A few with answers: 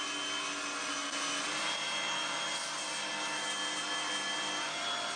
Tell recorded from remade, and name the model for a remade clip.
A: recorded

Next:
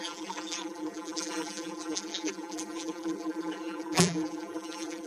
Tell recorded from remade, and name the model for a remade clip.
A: remade, vocoder, BigVGAN v2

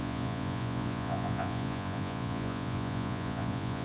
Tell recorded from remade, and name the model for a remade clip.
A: remade, vocoder, Vocos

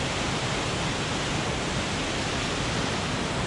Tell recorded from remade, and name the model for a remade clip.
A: recorded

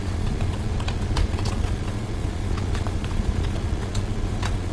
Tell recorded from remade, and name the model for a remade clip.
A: remade, vocoder, Vocos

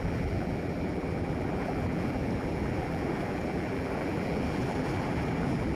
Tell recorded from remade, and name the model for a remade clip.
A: remade, vocoder, BigVGAN v2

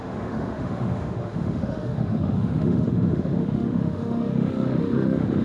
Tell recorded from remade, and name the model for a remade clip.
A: remade, autoencoder, DAC-VAE